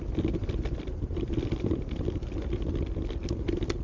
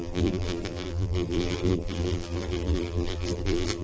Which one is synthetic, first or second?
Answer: second